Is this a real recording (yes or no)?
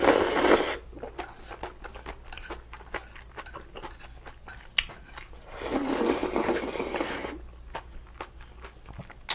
yes